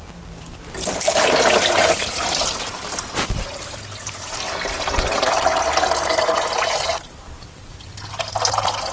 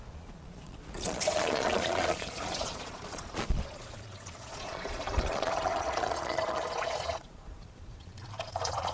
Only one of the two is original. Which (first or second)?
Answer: first